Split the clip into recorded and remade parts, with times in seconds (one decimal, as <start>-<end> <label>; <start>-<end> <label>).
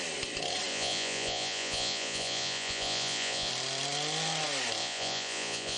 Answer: 0.0-0.7 recorded; 0.7-3.5 remade; 3.5-4.8 recorded; 4.8-5.8 remade